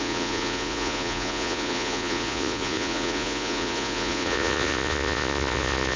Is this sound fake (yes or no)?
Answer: yes